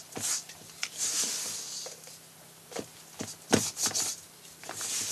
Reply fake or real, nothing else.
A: real